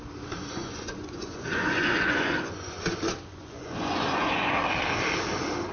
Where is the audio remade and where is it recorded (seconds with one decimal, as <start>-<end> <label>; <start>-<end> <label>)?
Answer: 0.0-0.4 recorded; 0.4-2.8 remade; 2.8-3.3 recorded; 3.3-4.6 remade; 4.6-5.7 recorded